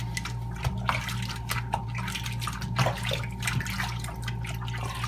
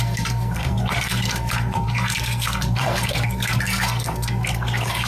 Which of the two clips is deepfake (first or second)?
second